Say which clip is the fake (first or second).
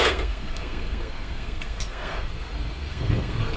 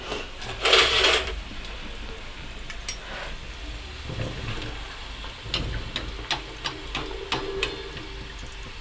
first